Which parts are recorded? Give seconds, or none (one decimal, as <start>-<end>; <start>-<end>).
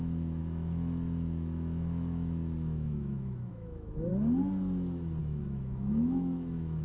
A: 4.1-5.2